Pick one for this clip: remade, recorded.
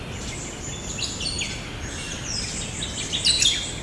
recorded